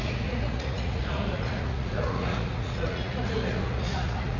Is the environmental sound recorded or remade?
remade